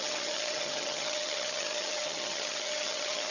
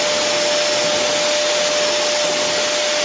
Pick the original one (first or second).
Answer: second